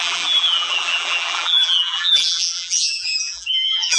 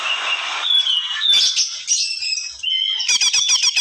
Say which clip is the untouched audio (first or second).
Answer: second